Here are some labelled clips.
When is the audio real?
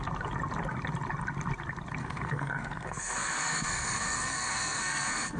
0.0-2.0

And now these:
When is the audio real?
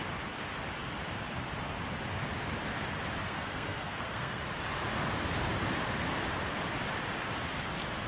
0.0-3.2; 4.4-8.1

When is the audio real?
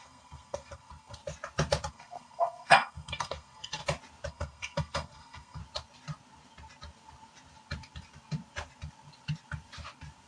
1.2-1.9; 3.8-4.3; 5.6-10.3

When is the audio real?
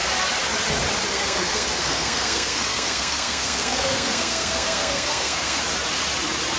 0.0-1.1; 5.6-6.6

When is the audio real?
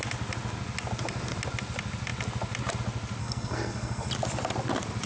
0.0-3.2; 4.1-5.1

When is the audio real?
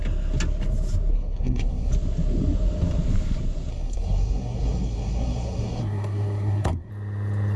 0.0-1.1; 1.9-3.7; 6.9-7.6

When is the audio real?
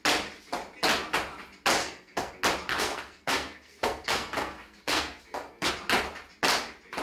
0.0-1.8; 2.3-2.7; 5.7-7.0